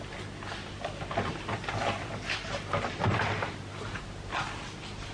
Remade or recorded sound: recorded